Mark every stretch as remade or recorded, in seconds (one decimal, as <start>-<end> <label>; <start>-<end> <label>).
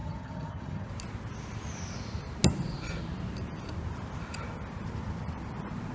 0.0-0.9 remade; 0.9-5.9 recorded